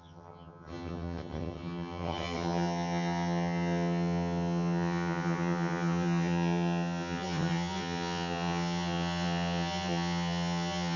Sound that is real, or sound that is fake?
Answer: fake